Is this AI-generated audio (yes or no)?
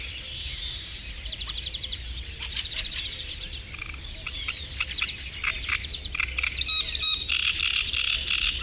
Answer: no